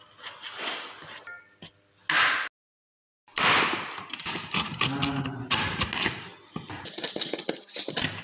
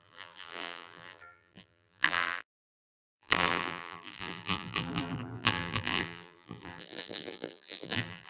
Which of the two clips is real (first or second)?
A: first